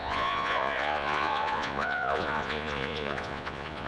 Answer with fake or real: fake